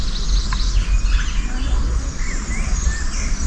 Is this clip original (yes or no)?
yes